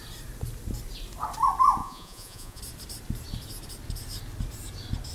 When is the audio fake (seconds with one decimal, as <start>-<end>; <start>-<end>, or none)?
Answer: 1.8-2.6